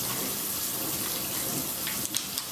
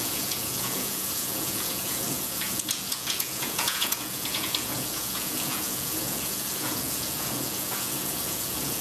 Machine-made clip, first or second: second